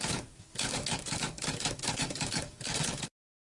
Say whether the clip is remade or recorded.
remade